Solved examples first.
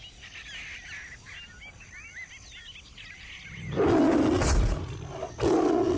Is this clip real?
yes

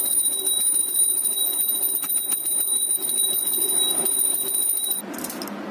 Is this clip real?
yes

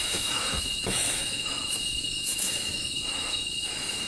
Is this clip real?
no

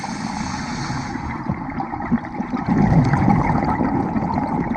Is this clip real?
yes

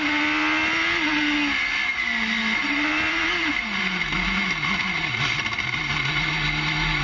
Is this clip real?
yes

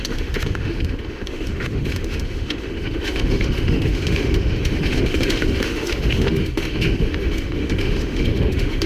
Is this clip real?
no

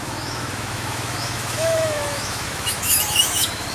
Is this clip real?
no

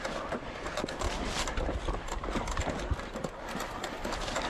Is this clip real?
yes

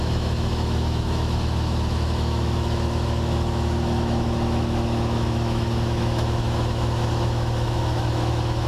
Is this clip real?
no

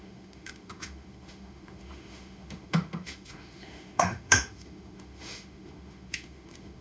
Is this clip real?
no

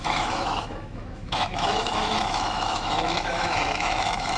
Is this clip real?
no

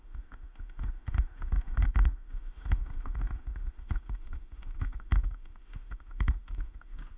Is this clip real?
no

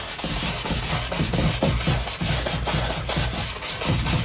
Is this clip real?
yes